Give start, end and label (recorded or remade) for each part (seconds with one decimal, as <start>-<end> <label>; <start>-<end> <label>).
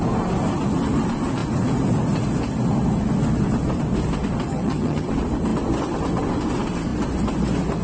0.0-4.5 recorded; 4.5-5.1 remade; 5.1-7.8 recorded